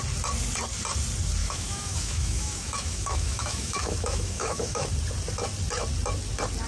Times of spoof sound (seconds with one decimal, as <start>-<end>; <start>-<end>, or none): 1.4-4.9